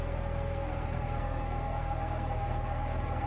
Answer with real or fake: fake